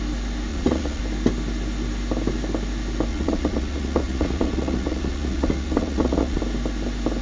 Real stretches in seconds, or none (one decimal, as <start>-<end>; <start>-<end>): 0.0-0.5; 1.0-3.1; 6.4-7.2